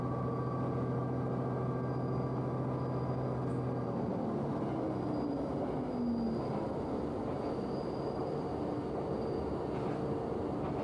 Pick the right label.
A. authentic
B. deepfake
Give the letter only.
A